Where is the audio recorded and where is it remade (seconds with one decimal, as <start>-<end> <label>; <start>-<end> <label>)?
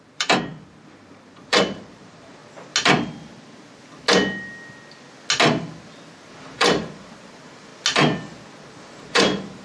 0.0-2.4 remade; 2.4-6.3 recorded; 6.3-7.7 remade; 7.7-8.8 recorded; 8.8-9.6 remade